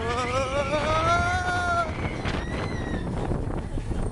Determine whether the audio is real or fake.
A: real